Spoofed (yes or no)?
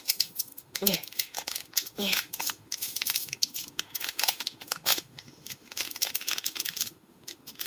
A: yes